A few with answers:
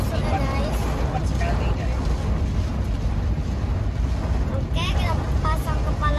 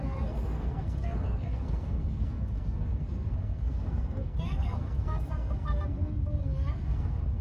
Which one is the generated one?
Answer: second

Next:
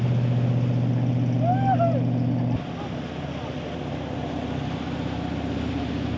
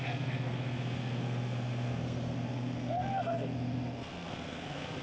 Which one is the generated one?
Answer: second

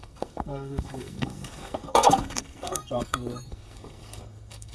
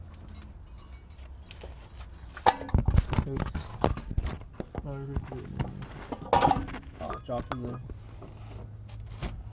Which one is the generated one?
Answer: first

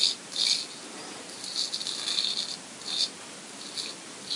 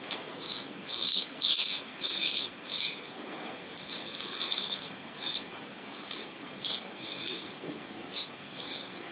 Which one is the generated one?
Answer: second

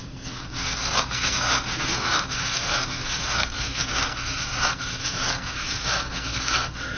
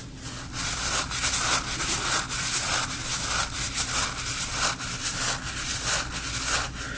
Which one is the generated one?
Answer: first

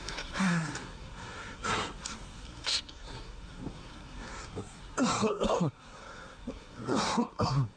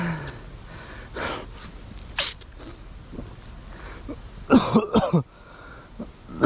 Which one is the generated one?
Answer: first